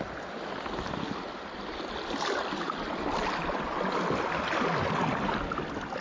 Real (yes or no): yes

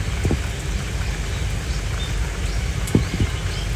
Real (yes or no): yes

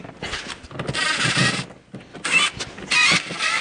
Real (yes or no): yes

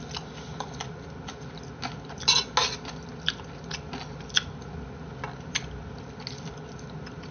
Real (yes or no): yes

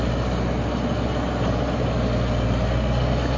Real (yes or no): yes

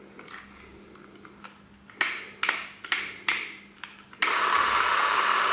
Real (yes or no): yes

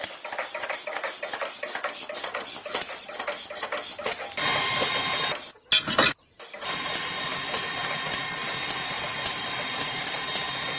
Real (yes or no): yes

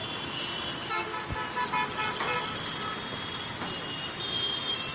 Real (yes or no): yes